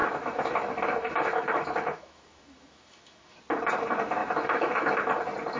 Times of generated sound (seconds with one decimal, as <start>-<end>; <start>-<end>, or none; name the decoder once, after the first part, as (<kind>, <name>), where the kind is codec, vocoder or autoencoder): 0.0-3.4 (autoencoder, DAC-VAE); 4.2-5.1